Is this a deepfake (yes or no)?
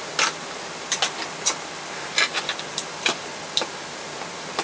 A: no